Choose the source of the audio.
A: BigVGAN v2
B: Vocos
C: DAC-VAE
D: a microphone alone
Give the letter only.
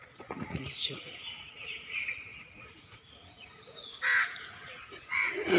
B